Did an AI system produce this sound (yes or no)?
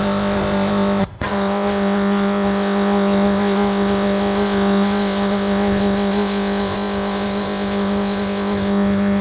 yes